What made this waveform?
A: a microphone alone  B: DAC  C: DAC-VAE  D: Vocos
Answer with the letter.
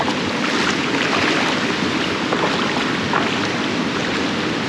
A